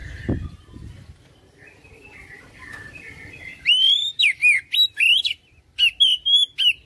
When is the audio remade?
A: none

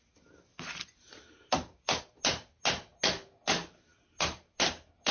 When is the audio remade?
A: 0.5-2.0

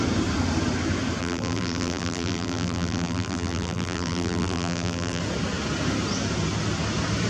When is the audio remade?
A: 1.2-5.2

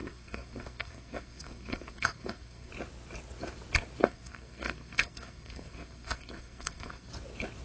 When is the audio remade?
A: 0.0-2.7; 4.0-7.1

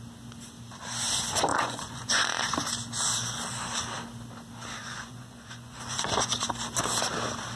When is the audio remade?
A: 1.5-2.5; 4.8-6.4

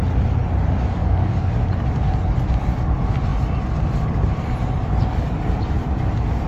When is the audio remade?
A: 1.0-1.5

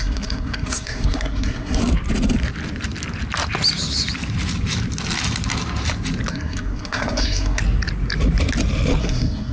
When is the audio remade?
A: 0.0-1.8; 6.3-7.6; 9.0-9.5